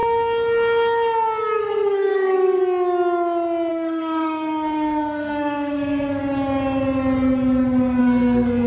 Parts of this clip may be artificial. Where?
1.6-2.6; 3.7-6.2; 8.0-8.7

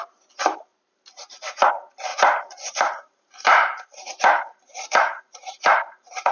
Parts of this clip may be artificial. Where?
0.7-1.7; 2.1-6.3